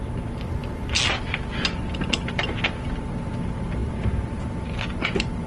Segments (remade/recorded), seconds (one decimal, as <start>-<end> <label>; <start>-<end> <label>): 0.0-5.5 recorded